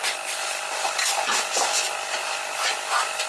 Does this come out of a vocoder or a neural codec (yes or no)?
yes